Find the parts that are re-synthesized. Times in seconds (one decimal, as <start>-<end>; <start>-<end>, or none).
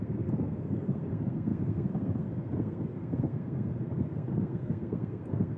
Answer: 0.0-5.6